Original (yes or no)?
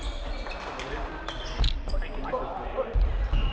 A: yes